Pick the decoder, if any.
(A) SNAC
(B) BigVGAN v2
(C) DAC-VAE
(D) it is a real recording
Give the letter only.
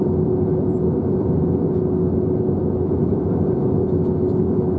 D